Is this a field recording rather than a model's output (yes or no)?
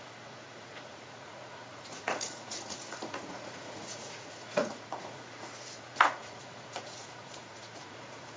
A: no